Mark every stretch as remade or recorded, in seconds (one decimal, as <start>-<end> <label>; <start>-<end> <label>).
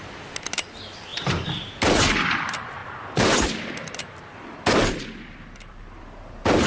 0.0-1.1 recorded; 1.1-1.8 remade; 1.8-6.7 recorded